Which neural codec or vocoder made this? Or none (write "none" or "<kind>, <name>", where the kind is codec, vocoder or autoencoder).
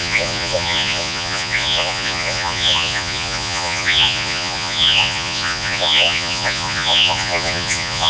vocoder, Vocos